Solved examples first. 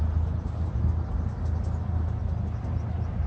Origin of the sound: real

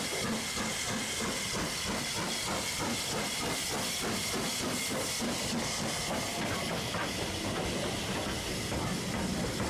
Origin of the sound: real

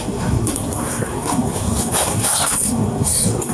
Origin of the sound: fake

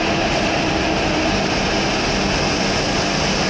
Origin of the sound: real